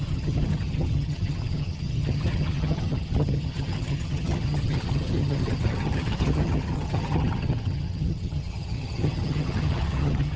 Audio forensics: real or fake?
fake